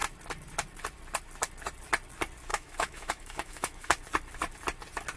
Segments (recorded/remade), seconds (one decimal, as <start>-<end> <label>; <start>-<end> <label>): 0.0-2.5 recorded; 2.5-4.0 remade; 4.0-5.2 recorded

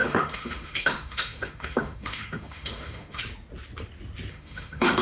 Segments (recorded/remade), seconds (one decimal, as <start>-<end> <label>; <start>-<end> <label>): 0.0-3.2 remade; 3.2-4.3 recorded; 4.3-5.0 remade

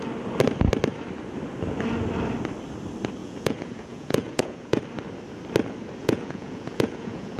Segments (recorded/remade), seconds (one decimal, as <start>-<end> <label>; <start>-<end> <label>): 0.0-3.2 recorded; 3.2-4.8 remade; 4.8-6.0 recorded; 6.0-7.4 remade

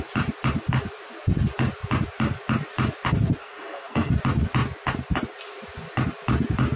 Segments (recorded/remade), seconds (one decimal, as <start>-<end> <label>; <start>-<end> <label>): 0.0-3.4 recorded; 3.4-4.1 remade; 4.1-6.8 recorded

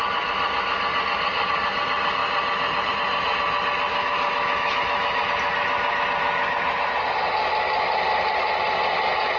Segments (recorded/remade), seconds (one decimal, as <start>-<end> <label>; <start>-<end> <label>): 0.0-3.9 recorded; 3.9-5.2 remade; 5.2-9.4 recorded

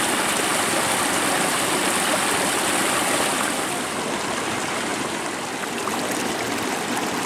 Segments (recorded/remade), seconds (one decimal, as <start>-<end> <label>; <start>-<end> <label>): 0.0-7.3 recorded

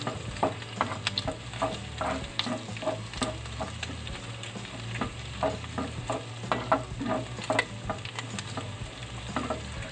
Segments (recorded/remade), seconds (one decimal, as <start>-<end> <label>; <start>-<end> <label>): 0.0-1.8 recorded; 1.8-6.0 remade; 6.0-9.9 recorded